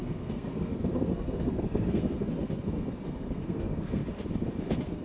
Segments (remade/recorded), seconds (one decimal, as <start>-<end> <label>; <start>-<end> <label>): 0.0-4.0 remade; 4.0-4.6 recorded; 4.6-5.0 remade